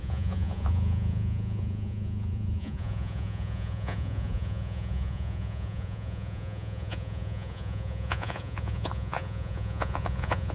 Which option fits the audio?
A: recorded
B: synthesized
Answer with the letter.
B